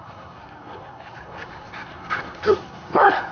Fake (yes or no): yes